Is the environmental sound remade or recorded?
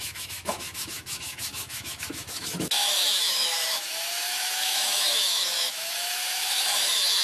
remade